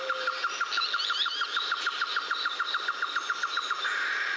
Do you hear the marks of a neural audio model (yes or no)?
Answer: no